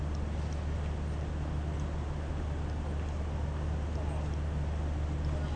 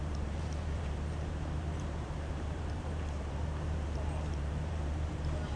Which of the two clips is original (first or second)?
first